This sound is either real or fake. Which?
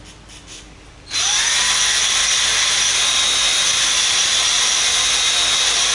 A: real